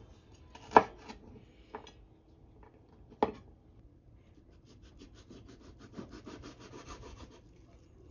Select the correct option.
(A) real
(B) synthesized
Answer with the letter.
A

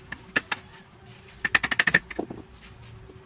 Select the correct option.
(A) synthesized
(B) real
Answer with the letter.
B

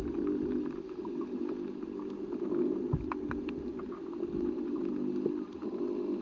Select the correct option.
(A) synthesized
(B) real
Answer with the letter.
B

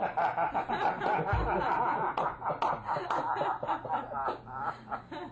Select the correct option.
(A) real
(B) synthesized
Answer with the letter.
A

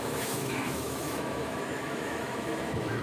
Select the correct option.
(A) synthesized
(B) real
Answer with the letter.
A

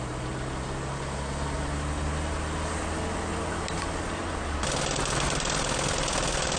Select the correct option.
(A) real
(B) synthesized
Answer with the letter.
A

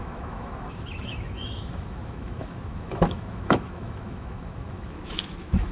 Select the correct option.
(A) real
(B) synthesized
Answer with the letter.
B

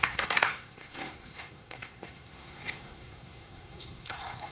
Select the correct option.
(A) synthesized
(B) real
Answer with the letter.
A